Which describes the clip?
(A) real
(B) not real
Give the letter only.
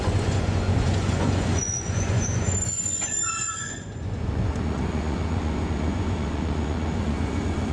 B